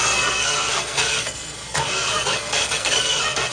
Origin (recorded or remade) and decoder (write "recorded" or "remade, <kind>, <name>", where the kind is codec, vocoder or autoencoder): remade, codec, SNAC